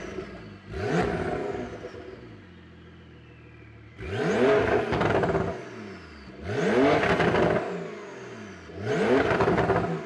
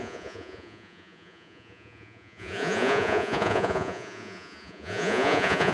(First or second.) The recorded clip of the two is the first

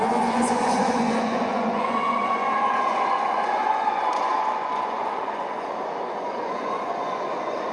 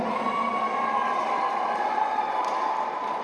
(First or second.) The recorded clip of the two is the second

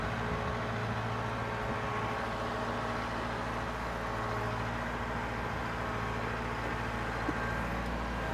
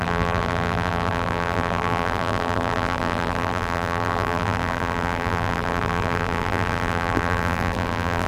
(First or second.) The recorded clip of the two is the first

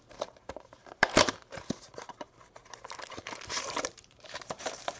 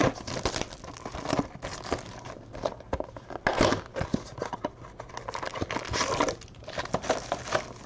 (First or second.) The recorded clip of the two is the second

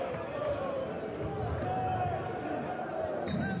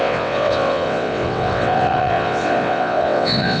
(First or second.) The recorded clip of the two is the first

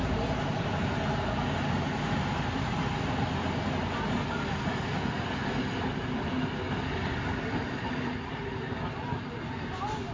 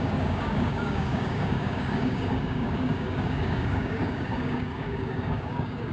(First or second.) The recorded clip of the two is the first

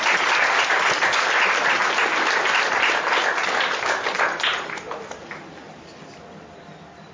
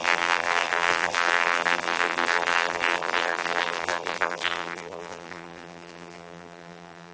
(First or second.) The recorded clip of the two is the first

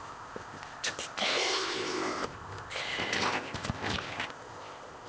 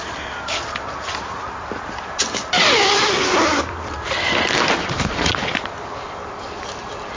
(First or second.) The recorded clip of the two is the second